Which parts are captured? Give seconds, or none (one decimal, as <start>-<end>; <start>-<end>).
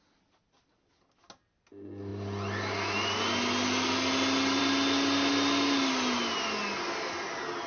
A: 0.0-7.7